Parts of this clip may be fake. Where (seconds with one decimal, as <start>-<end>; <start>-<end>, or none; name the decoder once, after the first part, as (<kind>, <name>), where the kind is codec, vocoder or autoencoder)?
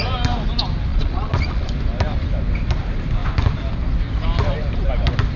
0.9-1.7 (vocoder, Vocos)